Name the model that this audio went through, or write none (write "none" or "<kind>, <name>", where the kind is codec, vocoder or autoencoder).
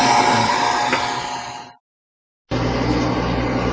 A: none